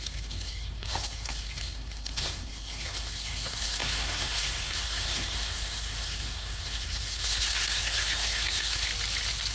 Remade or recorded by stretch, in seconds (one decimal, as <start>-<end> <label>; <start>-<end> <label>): 0.0-8.9 remade; 8.9-9.5 recorded